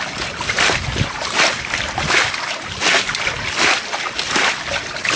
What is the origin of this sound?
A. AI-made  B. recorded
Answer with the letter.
B